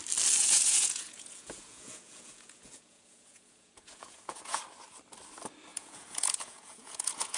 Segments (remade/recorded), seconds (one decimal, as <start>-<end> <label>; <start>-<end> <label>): 0.0-0.4 recorded; 0.4-4.6 remade; 4.6-5.7 recorded; 5.7-7.4 remade